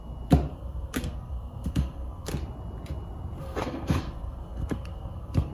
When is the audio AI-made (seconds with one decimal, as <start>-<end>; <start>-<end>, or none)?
0.5-2.3; 3.4-5.5